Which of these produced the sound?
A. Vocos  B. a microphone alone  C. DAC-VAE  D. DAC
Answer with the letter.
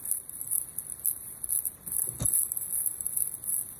B